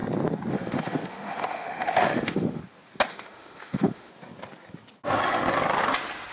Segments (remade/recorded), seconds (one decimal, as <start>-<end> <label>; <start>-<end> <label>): 0.0-0.5 recorded; 0.5-2.6 remade; 2.6-3.1 recorded; 3.1-4.1 remade; 4.1-6.3 recorded